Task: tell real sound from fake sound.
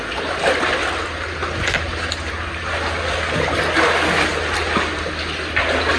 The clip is real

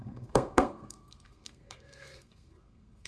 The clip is fake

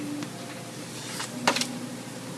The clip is real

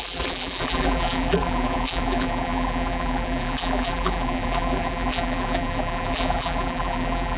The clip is fake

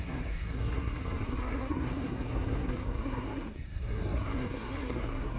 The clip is fake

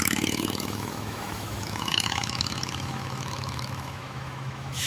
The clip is fake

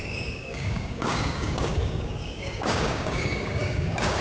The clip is fake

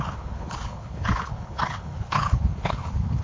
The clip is fake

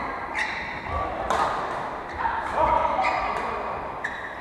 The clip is real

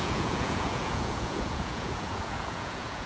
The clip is fake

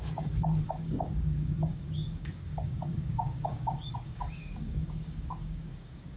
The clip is fake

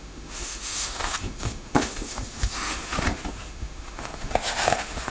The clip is fake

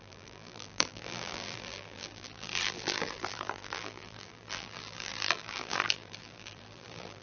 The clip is fake